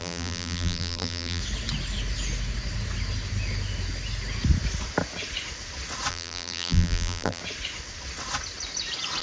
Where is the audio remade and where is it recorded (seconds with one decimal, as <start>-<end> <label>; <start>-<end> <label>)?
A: 0.0-1.4 remade; 1.4-6.1 recorded; 6.1-7.4 remade; 7.4-9.2 recorded

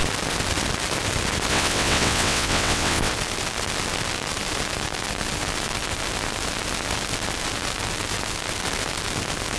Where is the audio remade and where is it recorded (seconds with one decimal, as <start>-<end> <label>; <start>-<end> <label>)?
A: 0.0-1.5 recorded; 1.5-3.1 remade; 3.1-9.6 recorded

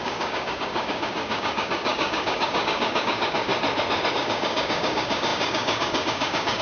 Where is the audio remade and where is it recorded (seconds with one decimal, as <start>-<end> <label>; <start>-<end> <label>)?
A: 0.0-3.5 remade; 3.5-4.1 recorded; 4.1-6.6 remade

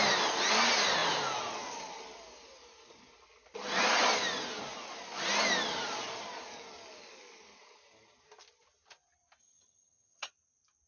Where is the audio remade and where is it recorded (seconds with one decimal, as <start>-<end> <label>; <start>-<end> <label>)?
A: 0.0-9.4 recorded; 9.4-10.3 remade; 10.3-10.9 recorded